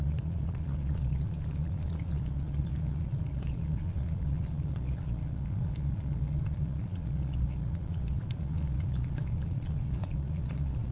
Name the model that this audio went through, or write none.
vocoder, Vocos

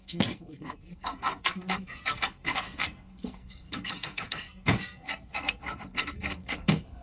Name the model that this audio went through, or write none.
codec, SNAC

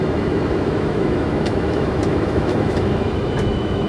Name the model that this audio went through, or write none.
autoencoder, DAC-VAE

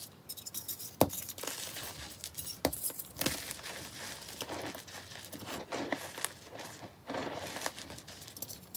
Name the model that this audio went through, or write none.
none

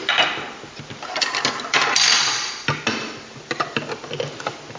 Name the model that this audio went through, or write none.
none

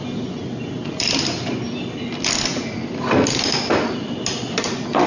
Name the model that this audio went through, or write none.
none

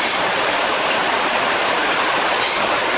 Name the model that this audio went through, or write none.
none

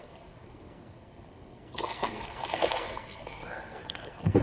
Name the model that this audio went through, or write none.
codec, SNAC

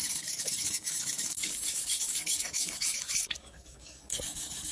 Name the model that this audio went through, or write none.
codec, DAC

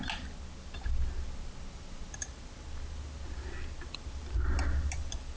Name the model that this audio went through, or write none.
none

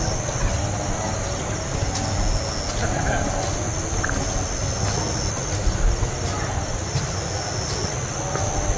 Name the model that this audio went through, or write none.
none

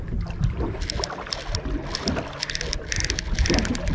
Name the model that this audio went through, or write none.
none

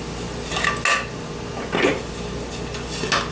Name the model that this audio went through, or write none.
none